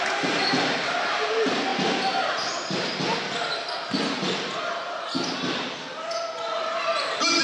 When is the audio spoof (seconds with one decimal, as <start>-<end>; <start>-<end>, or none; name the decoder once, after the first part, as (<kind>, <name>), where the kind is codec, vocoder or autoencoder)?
none